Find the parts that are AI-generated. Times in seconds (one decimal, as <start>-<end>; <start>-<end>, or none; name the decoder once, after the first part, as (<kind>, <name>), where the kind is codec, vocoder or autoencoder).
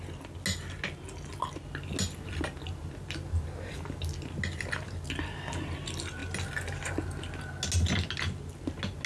none